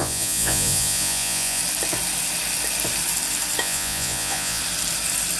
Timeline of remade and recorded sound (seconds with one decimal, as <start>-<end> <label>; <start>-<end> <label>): 0.0-1.6 remade; 1.6-3.6 recorded; 3.6-4.6 remade; 4.6-5.4 recorded